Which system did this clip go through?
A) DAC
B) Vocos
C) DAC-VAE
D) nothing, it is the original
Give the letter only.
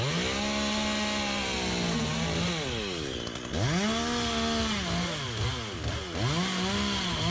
D